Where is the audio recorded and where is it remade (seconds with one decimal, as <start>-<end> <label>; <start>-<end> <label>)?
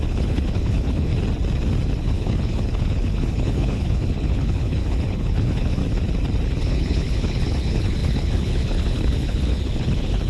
0.0-1.1 remade; 1.1-2.0 recorded; 2.0-5.8 remade; 5.8-6.6 recorded; 6.6-10.3 remade